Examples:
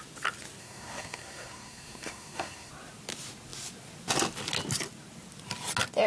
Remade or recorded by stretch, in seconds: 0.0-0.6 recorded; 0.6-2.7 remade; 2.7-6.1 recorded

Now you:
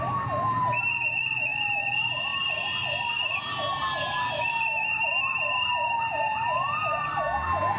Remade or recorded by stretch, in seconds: 0.0-7.8 recorded

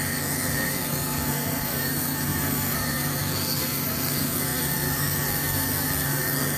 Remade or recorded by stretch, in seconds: 0.0-6.6 remade

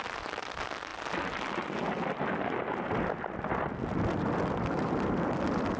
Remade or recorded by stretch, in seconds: 0.0-5.8 recorded

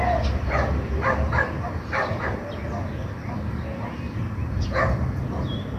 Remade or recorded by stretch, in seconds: 0.0-5.8 recorded

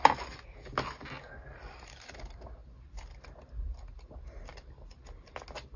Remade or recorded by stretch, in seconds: 0.0-5.8 recorded